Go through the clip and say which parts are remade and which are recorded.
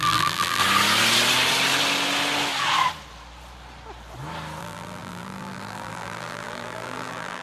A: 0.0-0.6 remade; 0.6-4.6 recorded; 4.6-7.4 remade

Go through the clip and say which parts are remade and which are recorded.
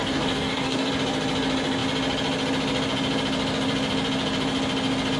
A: 0.0-0.9 remade; 0.9-5.2 recorded